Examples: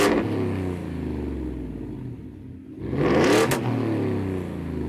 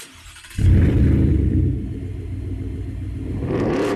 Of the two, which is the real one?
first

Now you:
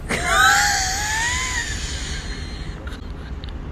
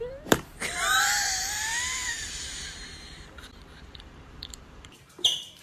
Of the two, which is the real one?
first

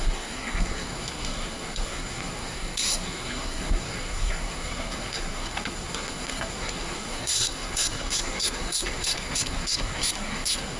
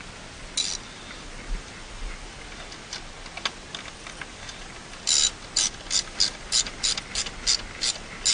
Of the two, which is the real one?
second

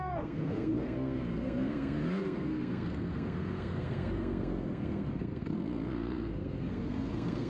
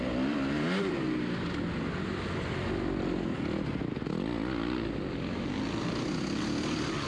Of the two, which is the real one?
second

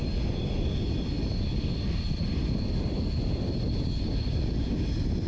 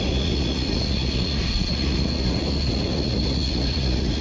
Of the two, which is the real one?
first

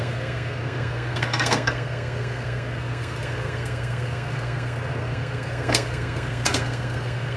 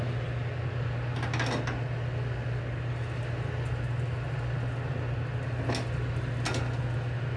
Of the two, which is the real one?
second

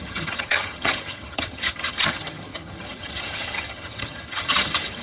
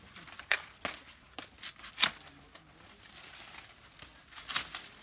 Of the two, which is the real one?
second